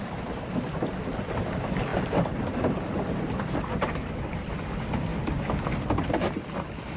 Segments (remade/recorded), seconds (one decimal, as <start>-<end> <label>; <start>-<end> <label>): 0.0-7.0 recorded